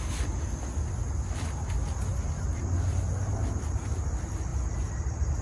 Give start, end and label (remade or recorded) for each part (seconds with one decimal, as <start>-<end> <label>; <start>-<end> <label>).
0.0-5.4 recorded

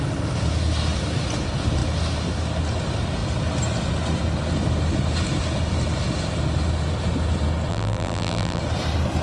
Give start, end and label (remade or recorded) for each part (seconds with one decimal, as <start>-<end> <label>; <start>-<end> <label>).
0.0-7.7 recorded; 7.7-8.6 remade; 8.6-9.2 recorded

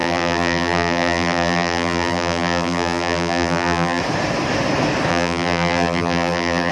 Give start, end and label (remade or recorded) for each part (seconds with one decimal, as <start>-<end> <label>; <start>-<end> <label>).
0.0-4.0 remade; 4.0-5.1 recorded; 5.1-6.7 remade

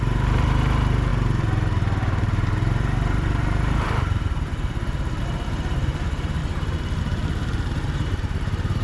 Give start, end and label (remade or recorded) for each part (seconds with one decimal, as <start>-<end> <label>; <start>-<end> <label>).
0.0-6.4 remade; 6.4-7.0 recorded; 7.0-8.8 remade

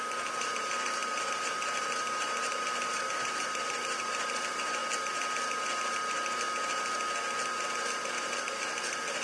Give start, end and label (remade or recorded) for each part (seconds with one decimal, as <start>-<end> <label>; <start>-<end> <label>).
0.0-4.8 remade; 4.8-8.1 recorded; 8.1-9.2 remade

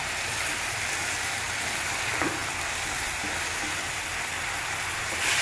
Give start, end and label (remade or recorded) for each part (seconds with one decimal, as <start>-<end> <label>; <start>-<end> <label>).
0.0-5.4 recorded

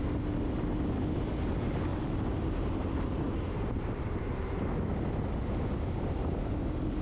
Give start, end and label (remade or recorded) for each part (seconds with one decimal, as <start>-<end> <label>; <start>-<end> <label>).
0.0-1.9 recorded; 1.9-5.4 remade; 5.4-7.0 recorded